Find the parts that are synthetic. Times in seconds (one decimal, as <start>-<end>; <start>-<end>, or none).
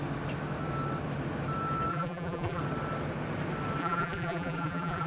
1.9-2.6; 3.8-5.1